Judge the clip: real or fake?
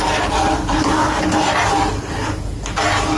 real